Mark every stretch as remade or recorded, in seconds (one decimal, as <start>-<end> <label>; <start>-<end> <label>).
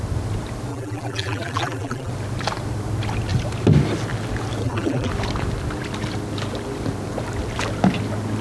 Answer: 0.0-0.7 recorded; 0.7-2.1 remade; 2.1-4.6 recorded; 4.6-5.1 remade; 5.1-8.4 recorded